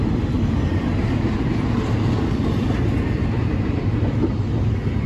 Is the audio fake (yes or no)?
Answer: no